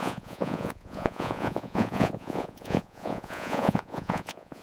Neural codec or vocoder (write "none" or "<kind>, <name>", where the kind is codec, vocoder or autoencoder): vocoder, Vocos